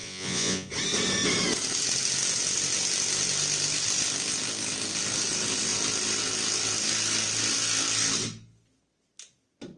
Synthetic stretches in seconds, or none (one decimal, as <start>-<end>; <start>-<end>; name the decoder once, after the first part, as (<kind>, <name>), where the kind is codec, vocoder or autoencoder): 0.0-0.7 (vocoder, Vocos)